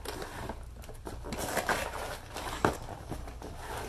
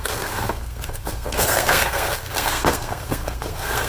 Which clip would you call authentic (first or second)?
first